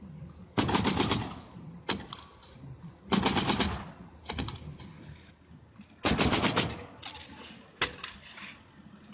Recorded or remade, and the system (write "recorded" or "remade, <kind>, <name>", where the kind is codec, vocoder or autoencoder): recorded